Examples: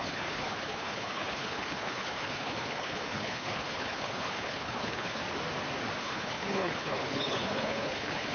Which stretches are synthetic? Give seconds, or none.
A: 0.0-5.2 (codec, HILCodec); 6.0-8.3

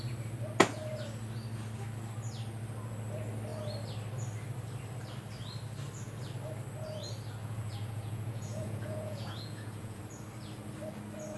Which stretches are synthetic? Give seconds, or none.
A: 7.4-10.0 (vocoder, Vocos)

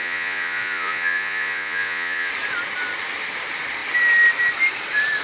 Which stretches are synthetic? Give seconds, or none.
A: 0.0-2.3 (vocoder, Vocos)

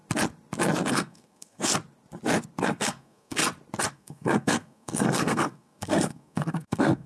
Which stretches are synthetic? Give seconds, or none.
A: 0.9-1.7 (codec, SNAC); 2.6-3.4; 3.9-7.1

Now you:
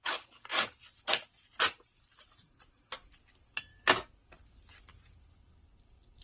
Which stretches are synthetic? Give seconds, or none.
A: 0.0-0.5 (vocoder, BigVGAN v2); 1.1-3.7; 4.7-6.2

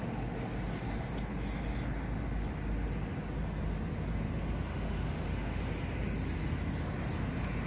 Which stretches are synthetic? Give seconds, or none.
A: 4.7-5.6 (autoencoder, DAC-VAE)

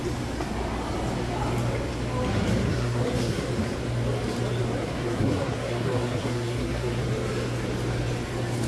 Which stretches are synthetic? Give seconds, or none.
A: 2.6-3.5 (codec, SNAC); 4.8-7.0

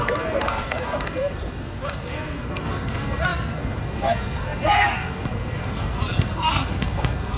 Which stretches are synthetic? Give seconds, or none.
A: 0.0-7.4 (codec, SNAC)